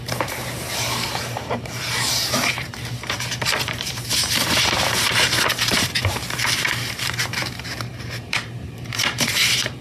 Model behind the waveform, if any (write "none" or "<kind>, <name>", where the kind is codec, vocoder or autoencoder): vocoder, BigVGAN v2